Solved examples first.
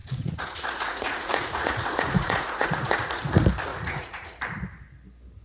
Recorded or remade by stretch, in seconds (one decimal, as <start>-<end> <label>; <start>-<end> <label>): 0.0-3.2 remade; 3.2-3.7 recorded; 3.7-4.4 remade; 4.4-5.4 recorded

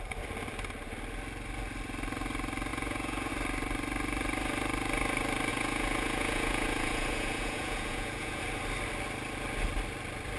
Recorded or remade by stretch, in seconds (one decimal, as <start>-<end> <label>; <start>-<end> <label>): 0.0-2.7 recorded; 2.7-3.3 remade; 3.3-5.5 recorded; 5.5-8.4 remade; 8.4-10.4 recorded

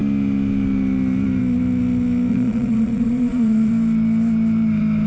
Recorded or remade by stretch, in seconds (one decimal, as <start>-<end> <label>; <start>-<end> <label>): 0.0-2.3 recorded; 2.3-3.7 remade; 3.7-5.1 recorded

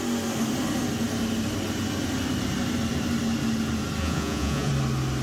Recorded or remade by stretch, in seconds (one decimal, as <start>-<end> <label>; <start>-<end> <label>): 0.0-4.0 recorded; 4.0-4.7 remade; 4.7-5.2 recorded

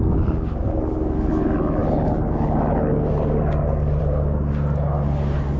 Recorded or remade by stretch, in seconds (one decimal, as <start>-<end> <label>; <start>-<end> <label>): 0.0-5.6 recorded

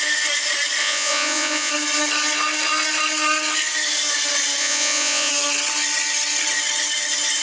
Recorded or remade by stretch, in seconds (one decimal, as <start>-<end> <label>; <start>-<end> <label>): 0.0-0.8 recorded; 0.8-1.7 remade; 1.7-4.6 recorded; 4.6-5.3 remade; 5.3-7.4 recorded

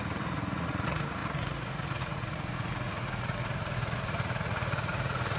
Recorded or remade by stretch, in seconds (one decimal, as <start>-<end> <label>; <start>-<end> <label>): 0.0-5.4 remade